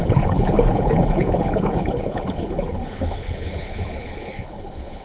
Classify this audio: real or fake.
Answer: fake